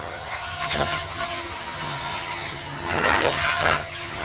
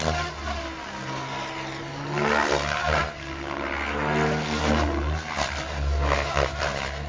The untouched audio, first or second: second